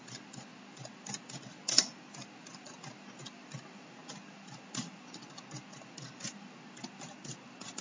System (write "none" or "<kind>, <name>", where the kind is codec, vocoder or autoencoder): none